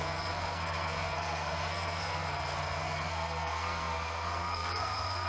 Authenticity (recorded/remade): remade